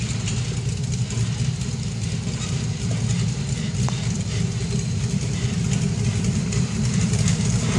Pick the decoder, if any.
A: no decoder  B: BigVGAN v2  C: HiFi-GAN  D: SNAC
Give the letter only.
A